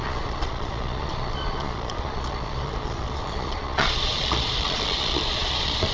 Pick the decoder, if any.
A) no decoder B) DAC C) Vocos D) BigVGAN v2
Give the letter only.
C